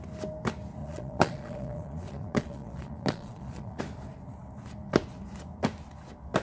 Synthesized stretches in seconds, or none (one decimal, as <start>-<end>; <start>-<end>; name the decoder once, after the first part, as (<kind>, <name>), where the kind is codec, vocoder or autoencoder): 0.8-3.8 (vocoder, Vocos)